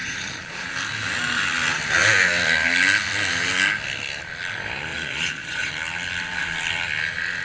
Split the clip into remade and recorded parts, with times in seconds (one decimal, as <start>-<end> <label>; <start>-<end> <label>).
0.0-0.7 remade; 0.7-4.9 recorded; 4.9-5.7 remade; 5.7-7.4 recorded